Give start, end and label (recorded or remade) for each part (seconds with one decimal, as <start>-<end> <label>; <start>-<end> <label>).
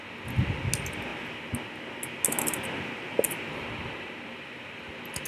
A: 0.0-5.3 recorded